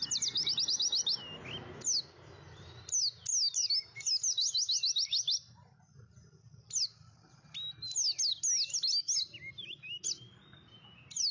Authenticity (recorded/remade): recorded